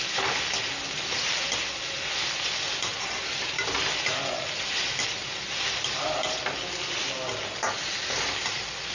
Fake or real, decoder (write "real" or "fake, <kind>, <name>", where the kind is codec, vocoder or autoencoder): real